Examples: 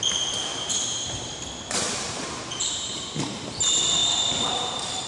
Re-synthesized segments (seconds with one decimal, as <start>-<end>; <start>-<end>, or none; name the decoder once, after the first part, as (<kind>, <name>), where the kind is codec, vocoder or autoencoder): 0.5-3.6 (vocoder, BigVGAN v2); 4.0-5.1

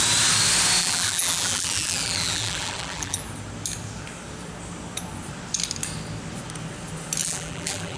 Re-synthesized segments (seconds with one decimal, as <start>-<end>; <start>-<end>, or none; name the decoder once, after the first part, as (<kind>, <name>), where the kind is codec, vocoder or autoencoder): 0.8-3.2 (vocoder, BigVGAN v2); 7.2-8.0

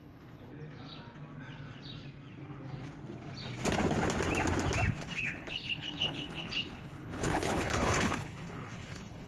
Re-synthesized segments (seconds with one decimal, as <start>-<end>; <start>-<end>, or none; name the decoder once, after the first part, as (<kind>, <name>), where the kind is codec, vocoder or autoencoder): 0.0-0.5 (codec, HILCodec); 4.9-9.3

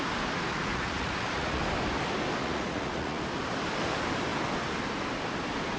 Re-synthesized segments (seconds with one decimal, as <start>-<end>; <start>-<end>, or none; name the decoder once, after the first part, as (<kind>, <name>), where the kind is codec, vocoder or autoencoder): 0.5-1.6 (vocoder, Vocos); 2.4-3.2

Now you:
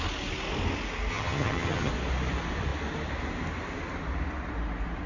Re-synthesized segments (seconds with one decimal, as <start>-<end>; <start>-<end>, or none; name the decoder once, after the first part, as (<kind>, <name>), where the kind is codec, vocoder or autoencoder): 1.1-1.9 (vocoder, HiFi-GAN)